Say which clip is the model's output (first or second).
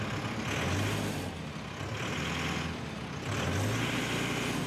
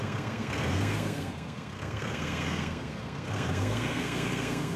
second